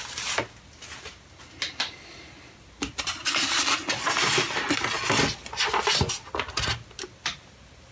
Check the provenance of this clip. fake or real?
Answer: real